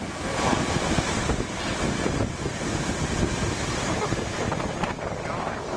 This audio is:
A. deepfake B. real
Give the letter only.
B